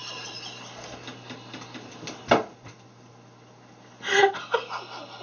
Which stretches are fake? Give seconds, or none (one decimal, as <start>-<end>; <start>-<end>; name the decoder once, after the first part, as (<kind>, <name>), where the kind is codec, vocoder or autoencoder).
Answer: none